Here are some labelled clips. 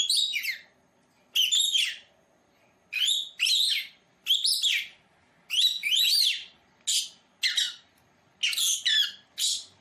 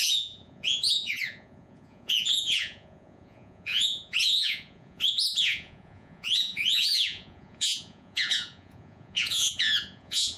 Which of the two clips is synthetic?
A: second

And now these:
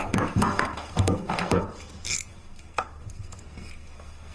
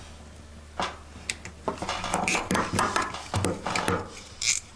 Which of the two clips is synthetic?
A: first